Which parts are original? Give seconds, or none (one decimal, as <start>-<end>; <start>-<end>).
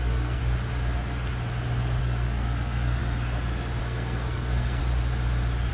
0.4-2.0; 3.0-3.8; 4.8-5.7